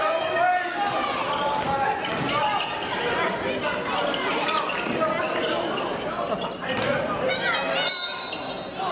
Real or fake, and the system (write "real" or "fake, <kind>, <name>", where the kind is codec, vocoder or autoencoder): real